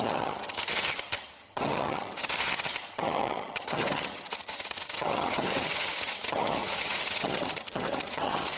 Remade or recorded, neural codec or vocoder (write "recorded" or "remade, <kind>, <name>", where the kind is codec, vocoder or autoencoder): remade, vocoder, HiFi-GAN